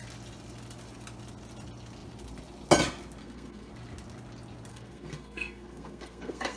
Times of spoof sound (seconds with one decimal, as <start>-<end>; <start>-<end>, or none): 3.2-3.7; 4.7-6.6